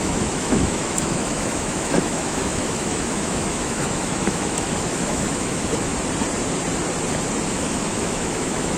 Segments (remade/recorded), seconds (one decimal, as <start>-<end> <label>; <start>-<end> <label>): 0.0-5.9 remade; 5.9-7.5 recorded; 7.5-8.8 remade

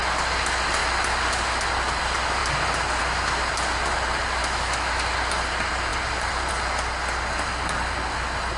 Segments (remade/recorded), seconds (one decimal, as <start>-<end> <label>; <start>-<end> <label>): 0.0-4.4 recorded; 4.4-5.0 remade; 5.0-8.6 recorded

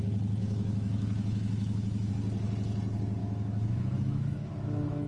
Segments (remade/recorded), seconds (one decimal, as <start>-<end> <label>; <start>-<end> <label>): 0.0-0.4 recorded; 0.4-2.1 remade; 2.1-3.2 recorded; 3.2-5.1 remade

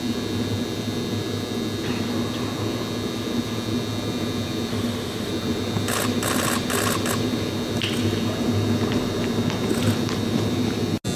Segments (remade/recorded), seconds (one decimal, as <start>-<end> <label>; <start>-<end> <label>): 0.0-4.7 recorded; 4.7-5.3 remade; 5.3-11.2 recorded